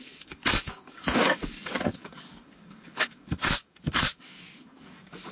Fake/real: fake